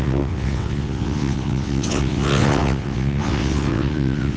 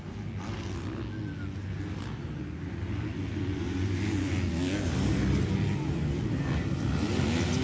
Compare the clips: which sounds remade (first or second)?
first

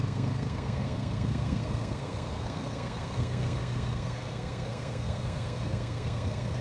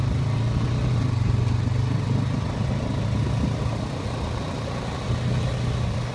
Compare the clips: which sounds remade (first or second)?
first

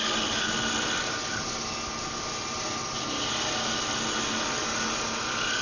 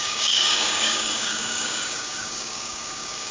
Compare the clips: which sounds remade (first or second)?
second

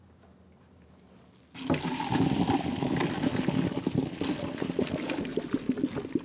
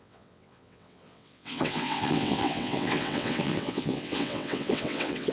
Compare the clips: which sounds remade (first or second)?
second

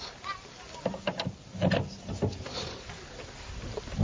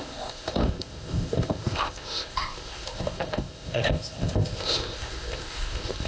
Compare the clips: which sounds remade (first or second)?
second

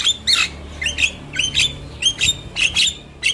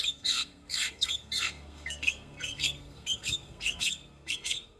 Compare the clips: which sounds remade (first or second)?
second